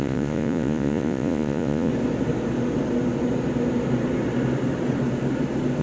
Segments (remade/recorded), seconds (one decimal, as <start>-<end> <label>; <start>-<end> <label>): 0.0-1.9 remade; 1.9-5.8 recorded

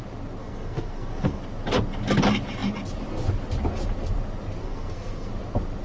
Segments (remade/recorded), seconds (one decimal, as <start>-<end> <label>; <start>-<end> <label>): 0.0-0.4 recorded; 0.4-1.4 remade; 1.4-4.6 recorded; 4.6-5.3 remade; 5.3-5.8 recorded